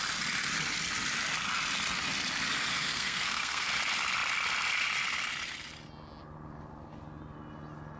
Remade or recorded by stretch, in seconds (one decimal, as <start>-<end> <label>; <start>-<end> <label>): 0.0-2.7 recorded; 2.7-3.7 remade; 3.7-8.0 recorded